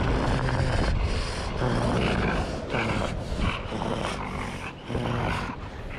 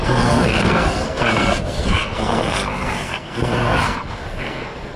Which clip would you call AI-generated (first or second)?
second